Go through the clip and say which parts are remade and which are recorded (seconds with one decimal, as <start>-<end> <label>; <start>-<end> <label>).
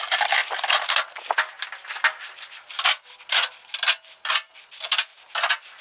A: 0.0-5.8 recorded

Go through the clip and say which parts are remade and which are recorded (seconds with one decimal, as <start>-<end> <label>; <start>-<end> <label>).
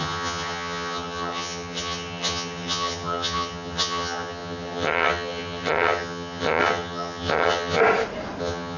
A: 0.0-7.8 remade; 7.8-8.4 recorded; 8.4-8.8 remade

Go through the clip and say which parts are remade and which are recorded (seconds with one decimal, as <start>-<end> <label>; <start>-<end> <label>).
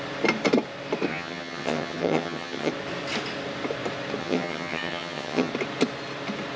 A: 0.0-1.1 recorded; 1.1-2.7 remade; 2.7-4.2 recorded; 4.2-5.5 remade; 5.5-6.6 recorded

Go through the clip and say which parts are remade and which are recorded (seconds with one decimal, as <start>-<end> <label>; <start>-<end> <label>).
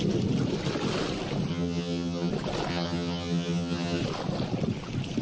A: 0.0-1.5 recorded; 1.5-2.3 remade; 2.3-2.7 recorded; 2.7-4.0 remade; 4.0-5.2 recorded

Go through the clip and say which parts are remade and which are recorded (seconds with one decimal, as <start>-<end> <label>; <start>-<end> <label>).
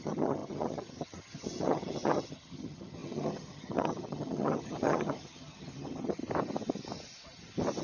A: 0.0-6.2 remade; 6.2-7.8 recorded